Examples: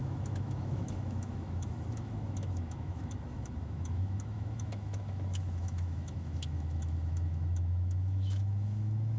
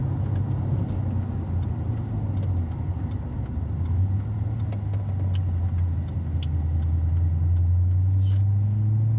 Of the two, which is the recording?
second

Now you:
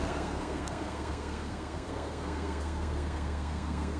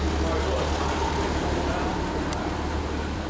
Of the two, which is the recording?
second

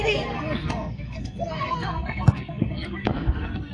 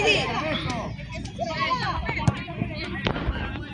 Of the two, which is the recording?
second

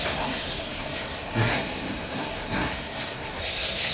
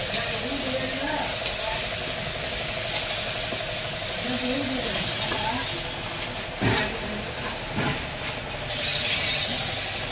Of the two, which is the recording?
second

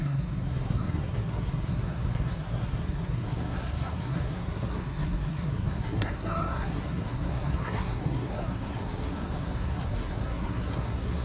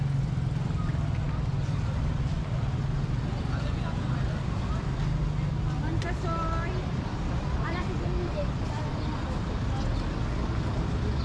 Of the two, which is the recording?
second